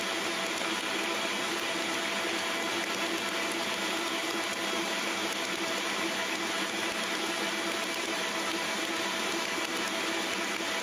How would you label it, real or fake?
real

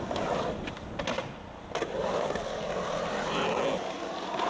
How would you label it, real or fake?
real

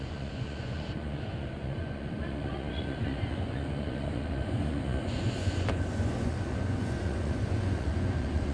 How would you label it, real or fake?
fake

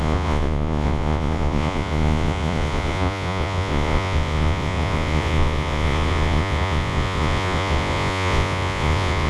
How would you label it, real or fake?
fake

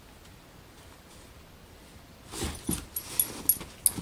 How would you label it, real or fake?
real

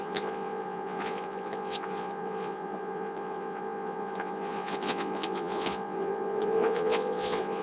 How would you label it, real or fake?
fake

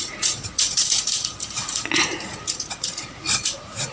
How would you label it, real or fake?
fake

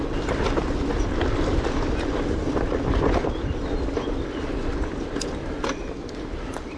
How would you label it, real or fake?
real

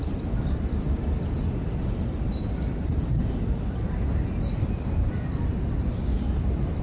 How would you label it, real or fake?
real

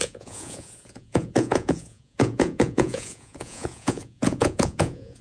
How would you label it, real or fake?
fake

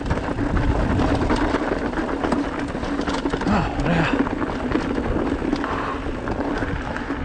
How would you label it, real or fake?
real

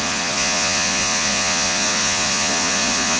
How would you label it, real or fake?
fake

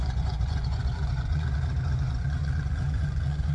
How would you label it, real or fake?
fake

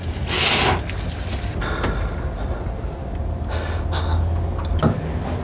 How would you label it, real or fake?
real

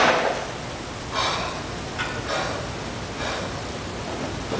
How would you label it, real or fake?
real